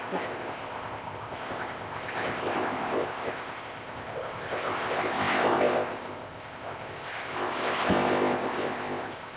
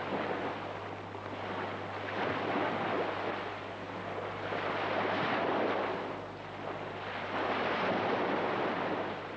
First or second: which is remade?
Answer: first